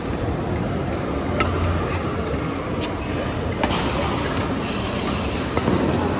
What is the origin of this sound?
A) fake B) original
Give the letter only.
B